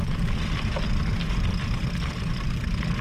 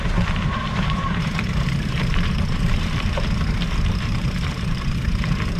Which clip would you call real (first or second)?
first